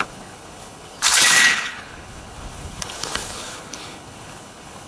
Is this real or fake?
fake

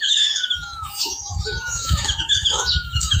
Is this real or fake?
fake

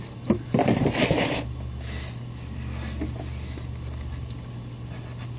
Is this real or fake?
real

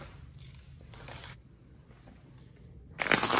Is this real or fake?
real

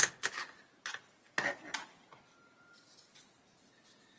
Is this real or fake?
real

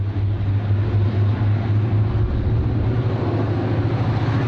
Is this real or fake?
real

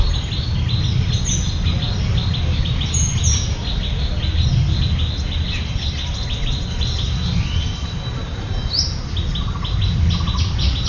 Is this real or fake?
real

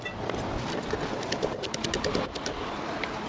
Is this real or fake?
real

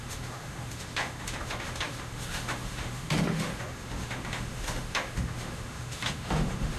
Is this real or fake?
fake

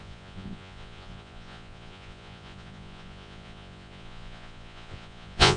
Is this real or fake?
fake